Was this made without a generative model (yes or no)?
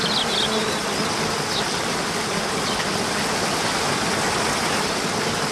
yes